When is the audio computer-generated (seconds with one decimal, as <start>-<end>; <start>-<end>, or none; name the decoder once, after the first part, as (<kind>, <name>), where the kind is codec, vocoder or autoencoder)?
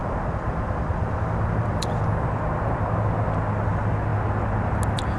0.0-2.1 (vocoder, BigVGAN v2)